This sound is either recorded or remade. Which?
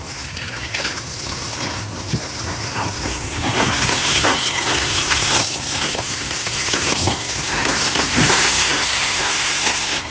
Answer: remade